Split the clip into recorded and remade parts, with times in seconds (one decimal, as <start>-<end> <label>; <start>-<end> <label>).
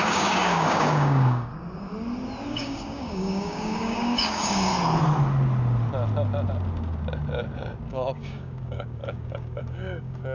0.0-1.5 remade; 1.5-2.5 recorded; 2.5-4.7 remade; 4.7-7.9 recorded; 7.9-10.3 remade